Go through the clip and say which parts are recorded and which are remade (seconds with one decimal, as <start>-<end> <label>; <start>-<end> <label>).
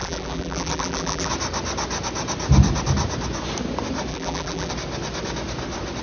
0.0-1.3 remade; 1.3-4.1 recorded; 4.1-4.7 remade; 4.7-6.0 recorded